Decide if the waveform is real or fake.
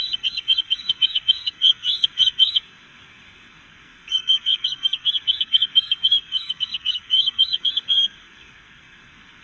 fake